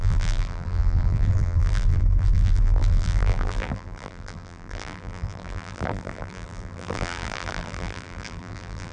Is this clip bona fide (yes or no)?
no